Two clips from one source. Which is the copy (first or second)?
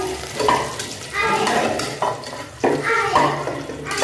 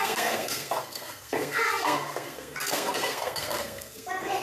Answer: second